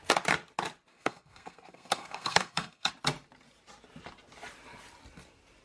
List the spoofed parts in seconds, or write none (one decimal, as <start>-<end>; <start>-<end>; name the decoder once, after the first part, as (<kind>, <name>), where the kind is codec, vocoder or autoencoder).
0.9-2.9 (codec, SNAC)